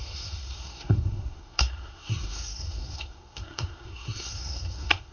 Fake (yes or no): yes